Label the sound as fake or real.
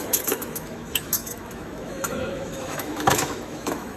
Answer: fake